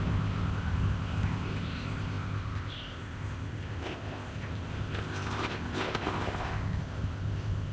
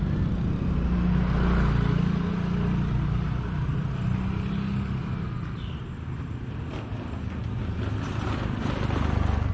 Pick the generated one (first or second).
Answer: first